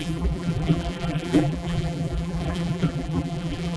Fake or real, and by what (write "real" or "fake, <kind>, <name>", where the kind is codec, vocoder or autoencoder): fake, vocoder, BigVGAN v2